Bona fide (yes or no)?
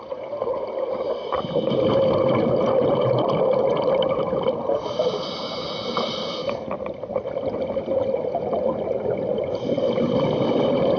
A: yes